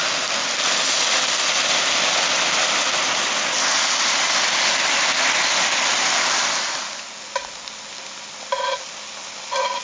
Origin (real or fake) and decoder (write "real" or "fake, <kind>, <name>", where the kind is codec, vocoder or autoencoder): real